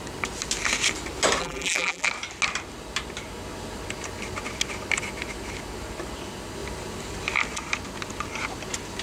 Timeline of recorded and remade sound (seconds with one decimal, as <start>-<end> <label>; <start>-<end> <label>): 0.0-1.4 recorded; 1.4-2.1 remade; 2.1-9.0 recorded